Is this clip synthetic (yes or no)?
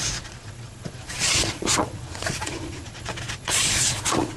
yes